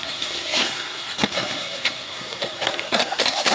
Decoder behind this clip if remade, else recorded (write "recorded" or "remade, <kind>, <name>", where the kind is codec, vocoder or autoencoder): remade, codec, SNAC